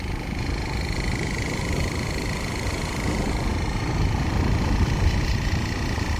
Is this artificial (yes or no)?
no